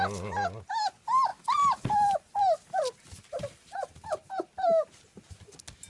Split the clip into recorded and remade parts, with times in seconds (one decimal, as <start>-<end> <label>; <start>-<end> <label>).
0.0-5.9 recorded